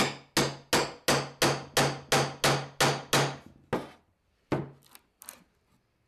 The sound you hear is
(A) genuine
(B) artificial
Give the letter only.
A